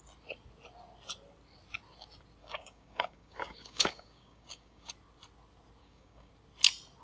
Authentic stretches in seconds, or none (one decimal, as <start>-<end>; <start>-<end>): 0.0-2.4; 4.9-5.8; 6.3-7.0